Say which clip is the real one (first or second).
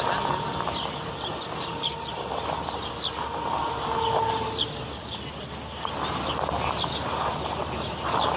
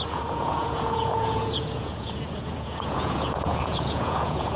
first